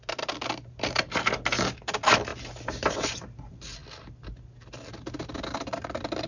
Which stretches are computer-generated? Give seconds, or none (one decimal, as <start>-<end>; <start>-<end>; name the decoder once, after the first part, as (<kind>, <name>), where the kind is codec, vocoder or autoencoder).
none